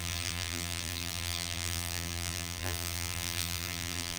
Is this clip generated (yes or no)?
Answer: yes